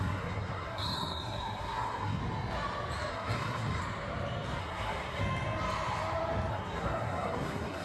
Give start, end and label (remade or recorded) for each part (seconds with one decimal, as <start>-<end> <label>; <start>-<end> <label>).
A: 0.0-2.2 remade; 2.2-3.1 recorded; 3.1-3.8 remade; 3.8-4.6 recorded; 4.6-5.2 remade; 5.2-6.5 recorded; 6.5-7.8 remade